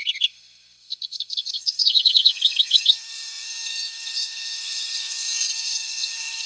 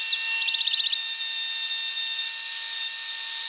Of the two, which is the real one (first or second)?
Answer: second